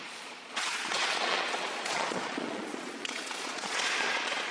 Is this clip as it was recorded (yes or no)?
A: no